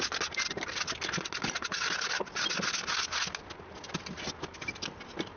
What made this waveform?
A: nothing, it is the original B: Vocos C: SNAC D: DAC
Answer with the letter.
A